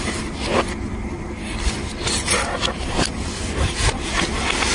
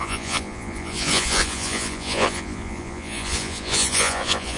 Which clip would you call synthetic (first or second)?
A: second